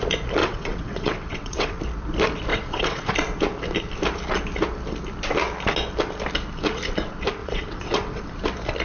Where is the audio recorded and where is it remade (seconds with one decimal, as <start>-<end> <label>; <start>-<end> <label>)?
0.0-0.4 recorded; 0.4-1.8 remade; 1.8-2.5 recorded; 2.5-3.1 remade; 3.1-7.4 recorded; 7.4-8.2 remade; 8.2-8.8 recorded